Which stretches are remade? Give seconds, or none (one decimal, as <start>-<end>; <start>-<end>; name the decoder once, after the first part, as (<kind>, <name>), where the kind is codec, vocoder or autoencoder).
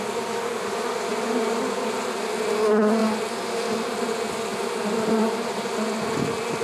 1.1-1.6 (vocoder, BigVGAN v2); 4.5-5.7